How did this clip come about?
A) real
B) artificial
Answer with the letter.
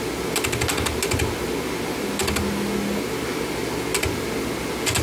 A